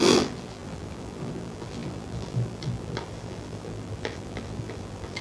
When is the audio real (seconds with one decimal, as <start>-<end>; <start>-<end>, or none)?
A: none